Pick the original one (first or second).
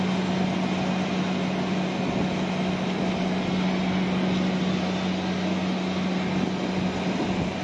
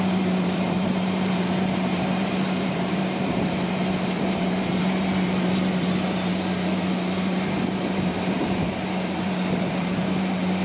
first